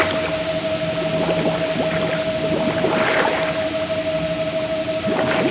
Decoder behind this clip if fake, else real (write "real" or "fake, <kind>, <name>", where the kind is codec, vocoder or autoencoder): real